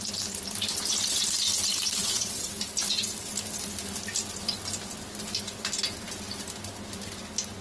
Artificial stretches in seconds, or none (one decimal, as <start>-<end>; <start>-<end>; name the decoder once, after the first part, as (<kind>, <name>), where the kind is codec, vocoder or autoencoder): 2.0-2.5 (vocoder, Vocos)